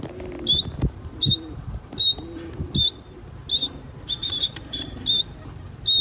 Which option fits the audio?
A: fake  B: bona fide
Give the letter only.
B